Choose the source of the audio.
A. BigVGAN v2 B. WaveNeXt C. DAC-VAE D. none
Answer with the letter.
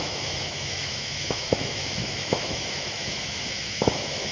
C